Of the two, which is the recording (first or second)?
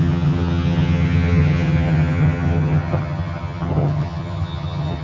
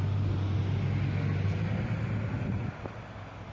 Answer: second